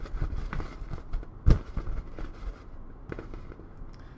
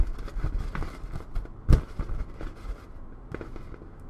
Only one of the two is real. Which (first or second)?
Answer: second